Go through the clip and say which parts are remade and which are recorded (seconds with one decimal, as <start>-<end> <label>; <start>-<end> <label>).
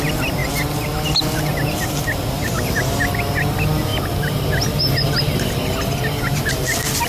0.0-7.1 recorded